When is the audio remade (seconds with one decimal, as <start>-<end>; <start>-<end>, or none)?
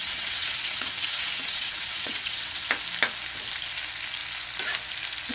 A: 0.0-2.7